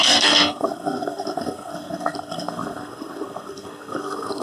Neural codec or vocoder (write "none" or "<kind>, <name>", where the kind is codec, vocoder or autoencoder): codec, SNAC